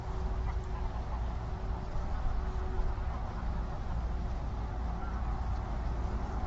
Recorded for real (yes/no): yes